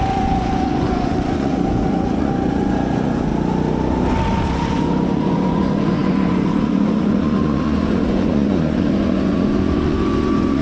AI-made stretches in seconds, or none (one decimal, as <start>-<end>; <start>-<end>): 0.0-3.3; 4.7-10.6